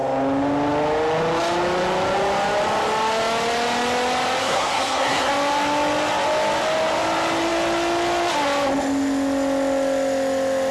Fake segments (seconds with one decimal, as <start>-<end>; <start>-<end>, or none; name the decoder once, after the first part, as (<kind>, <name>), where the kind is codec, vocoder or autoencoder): 4.4-5.3 (codec, SNAC)